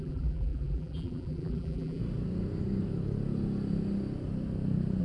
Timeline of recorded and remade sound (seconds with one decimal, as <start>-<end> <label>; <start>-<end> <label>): 0.0-2.0 remade; 2.0-5.0 recorded